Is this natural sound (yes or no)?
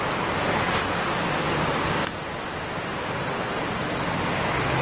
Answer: yes